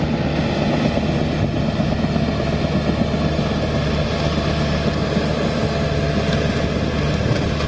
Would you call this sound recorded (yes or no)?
yes